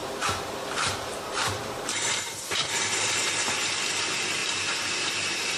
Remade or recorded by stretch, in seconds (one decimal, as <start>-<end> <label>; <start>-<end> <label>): 0.0-3.3 remade; 3.3-4.4 recorded; 4.4-5.6 remade